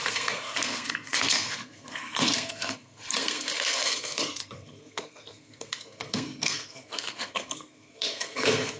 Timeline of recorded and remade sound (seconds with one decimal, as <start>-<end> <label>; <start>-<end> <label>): 0.0-8.8 remade